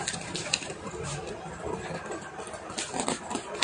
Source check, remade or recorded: recorded